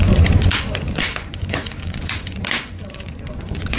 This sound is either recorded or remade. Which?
remade